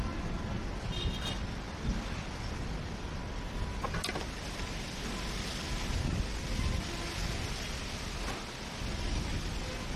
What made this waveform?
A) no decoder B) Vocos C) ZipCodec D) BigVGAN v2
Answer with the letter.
A